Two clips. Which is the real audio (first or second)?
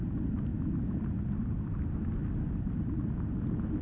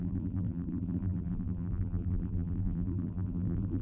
first